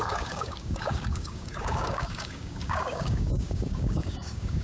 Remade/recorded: remade